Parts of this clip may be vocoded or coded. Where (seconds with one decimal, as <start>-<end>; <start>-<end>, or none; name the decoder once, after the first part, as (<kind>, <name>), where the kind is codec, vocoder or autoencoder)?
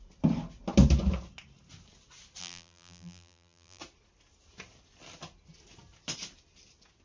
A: 2.4-3.8 (vocoder, BigVGAN v2)